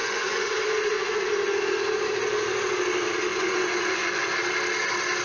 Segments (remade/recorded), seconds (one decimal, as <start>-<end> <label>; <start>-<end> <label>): 0.0-1.3 remade; 1.3-3.3 recorded; 3.3-4.3 remade; 4.3-5.2 recorded

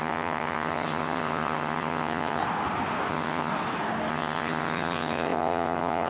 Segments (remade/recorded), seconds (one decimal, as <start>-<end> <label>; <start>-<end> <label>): 0.0-2.4 remade; 2.4-3.1 recorded; 3.1-3.5 remade; 3.5-4.1 recorded; 4.1-6.1 remade

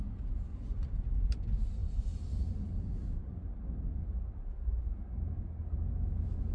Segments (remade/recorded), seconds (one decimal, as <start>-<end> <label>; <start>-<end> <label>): 0.0-6.5 recorded

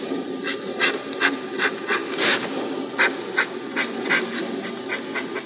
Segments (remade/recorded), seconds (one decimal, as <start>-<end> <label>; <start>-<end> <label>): 0.0-5.5 recorded

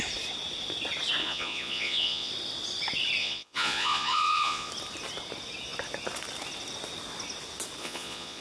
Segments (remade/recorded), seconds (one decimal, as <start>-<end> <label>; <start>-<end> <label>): 0.0-1.2 recorded; 1.2-2.3 remade; 2.3-3.2 recorded; 3.2-4.7 remade; 4.7-7.8 recorded; 7.8-8.4 remade

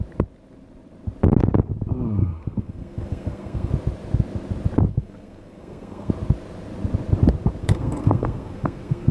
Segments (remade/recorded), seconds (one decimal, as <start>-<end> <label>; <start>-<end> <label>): 0.0-2.2 recorded; 2.2-3.7 remade; 3.7-4.9 recorded; 4.9-6.1 remade; 6.1-7.6 recorded; 7.6-9.1 remade

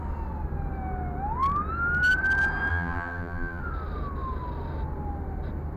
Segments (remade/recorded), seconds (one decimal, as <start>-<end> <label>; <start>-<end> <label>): 0.0-2.7 recorded; 2.7-3.6 remade; 3.6-5.8 recorded

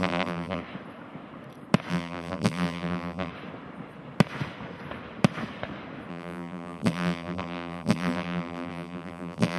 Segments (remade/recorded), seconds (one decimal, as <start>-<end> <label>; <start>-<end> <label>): 0.0-0.6 remade; 0.6-1.9 recorded; 1.9-3.3 remade; 3.3-6.1 recorded; 6.1-9.6 remade